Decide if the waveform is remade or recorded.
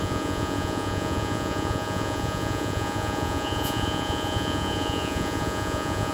remade